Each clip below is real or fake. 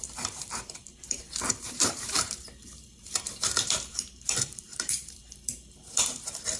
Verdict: fake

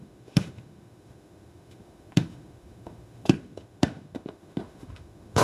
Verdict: fake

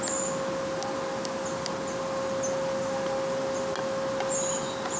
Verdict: real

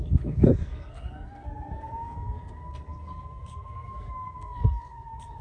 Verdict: fake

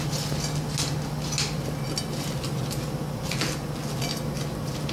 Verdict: real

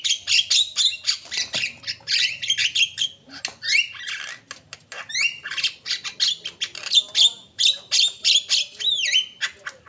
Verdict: real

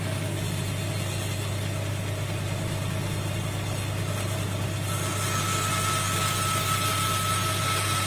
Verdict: real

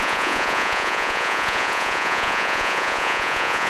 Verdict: fake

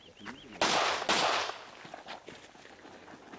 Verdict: real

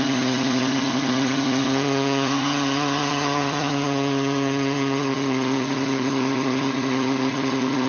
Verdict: fake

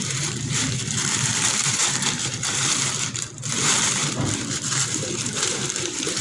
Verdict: fake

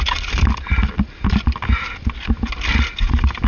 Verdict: real